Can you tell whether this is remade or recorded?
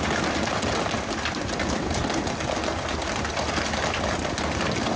recorded